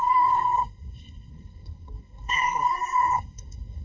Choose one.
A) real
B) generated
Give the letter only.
B